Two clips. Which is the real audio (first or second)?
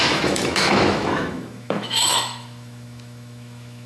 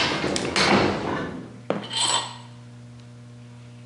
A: second